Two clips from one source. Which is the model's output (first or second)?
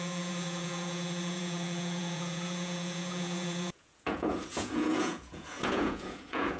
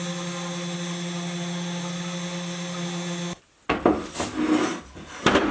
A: first